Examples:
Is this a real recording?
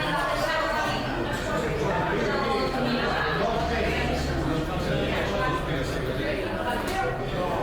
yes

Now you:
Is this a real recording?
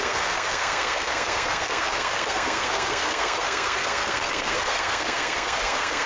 no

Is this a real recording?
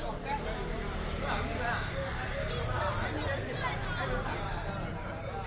yes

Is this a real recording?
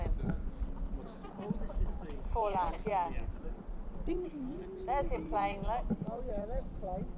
yes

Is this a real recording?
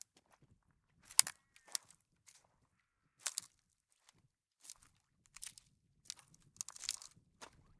yes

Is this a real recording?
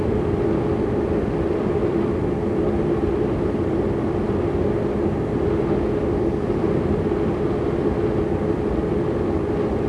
yes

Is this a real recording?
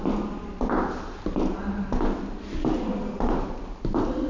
yes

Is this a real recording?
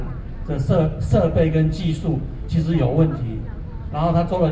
yes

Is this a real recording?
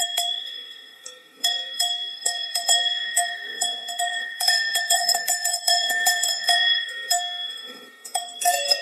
no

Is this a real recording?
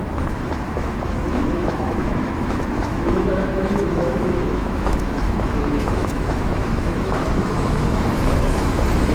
no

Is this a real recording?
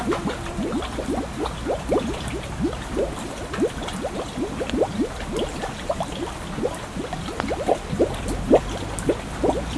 no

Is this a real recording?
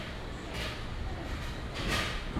no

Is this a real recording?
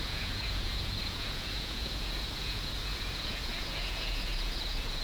no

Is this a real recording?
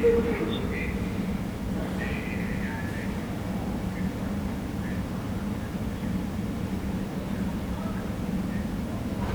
yes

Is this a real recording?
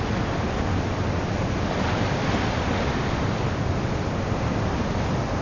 yes